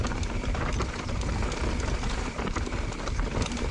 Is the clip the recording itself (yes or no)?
no